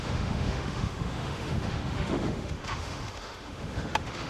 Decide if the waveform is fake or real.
fake